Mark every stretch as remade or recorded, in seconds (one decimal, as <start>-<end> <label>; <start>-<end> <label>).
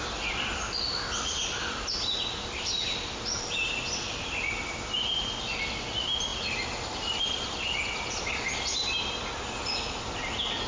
0.0-10.7 recorded